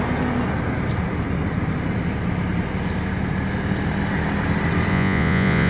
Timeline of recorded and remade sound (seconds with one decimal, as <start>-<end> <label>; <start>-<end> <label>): 0.0-4.9 recorded; 4.9-5.7 remade